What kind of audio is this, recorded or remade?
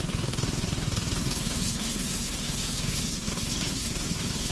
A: remade